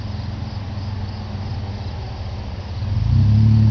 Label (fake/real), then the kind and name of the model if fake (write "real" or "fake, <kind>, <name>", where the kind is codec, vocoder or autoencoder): real